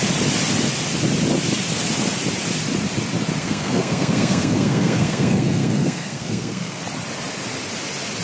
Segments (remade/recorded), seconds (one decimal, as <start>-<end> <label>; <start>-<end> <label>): 0.0-3.4 recorded; 3.4-6.8 remade; 6.8-8.2 recorded